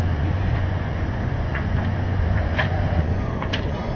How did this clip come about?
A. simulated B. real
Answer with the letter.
A